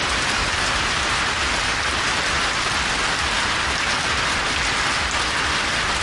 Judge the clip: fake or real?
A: real